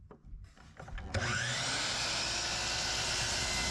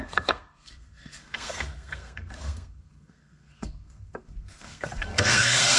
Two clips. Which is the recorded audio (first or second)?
first